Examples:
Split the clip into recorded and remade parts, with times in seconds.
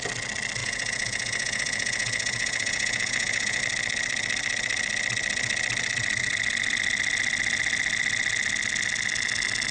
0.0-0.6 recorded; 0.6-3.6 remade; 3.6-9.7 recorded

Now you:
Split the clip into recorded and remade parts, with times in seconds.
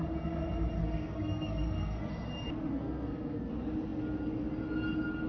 0.0-0.8 recorded; 0.8-2.1 remade; 2.1-2.7 recorded; 2.7-3.5 remade; 3.5-5.3 recorded